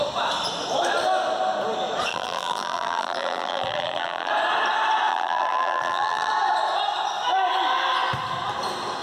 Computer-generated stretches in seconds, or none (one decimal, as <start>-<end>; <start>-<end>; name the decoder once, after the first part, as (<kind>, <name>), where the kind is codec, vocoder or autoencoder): 2.1-4.3 (vocoder, BigVGAN v2); 5.1-6.3